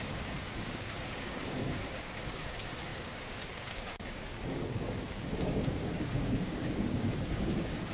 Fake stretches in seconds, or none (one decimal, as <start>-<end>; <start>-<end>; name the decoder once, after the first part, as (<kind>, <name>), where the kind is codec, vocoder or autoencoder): 0.0-7.9 (codec, DAC)